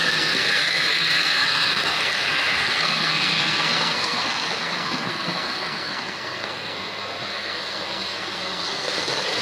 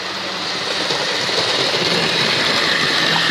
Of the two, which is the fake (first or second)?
first